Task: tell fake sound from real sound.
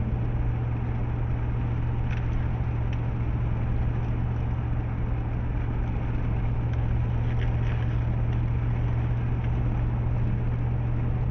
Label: real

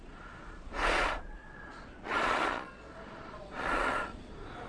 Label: fake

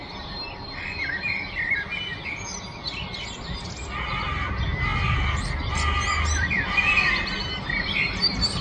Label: real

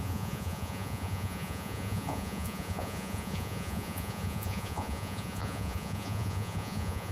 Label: fake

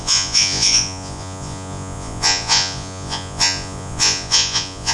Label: fake